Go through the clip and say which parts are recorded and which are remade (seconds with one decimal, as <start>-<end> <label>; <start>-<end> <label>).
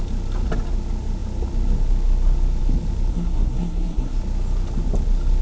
0.0-3.1 recorded; 3.1-4.2 remade; 4.2-5.4 recorded